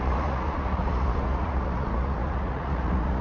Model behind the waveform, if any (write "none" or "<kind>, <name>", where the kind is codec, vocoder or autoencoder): vocoder, Vocos